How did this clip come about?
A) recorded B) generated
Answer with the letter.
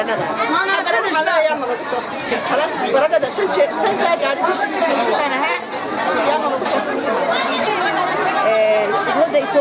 A